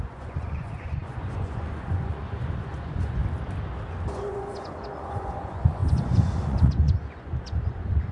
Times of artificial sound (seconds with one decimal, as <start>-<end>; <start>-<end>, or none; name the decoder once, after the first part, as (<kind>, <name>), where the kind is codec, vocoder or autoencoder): 0.0-3.2 (vocoder, Vocos); 4.1-8.1